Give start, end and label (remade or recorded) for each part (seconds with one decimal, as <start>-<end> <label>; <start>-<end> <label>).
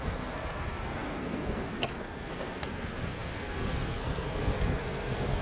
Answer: 0.0-5.4 remade